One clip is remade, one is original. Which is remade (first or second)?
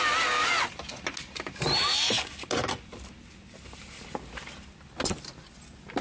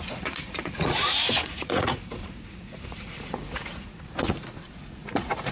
second